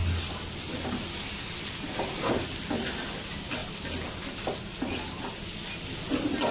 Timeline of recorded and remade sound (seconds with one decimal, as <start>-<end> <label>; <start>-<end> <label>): 0.0-6.5 recorded